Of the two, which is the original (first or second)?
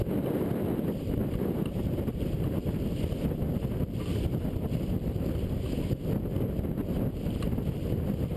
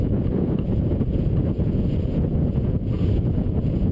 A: first